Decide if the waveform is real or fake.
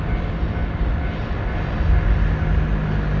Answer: real